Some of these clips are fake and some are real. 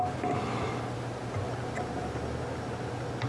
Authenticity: real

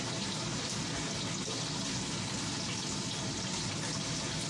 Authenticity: real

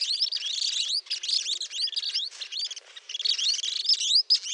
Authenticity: real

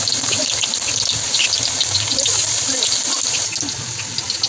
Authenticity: real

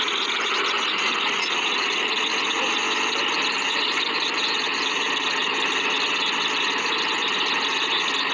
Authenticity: real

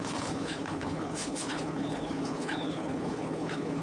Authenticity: fake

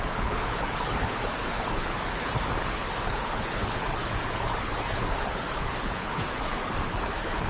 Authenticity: fake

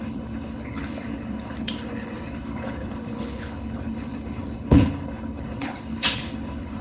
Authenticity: fake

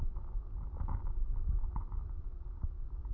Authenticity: real